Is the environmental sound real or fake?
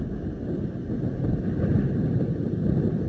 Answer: real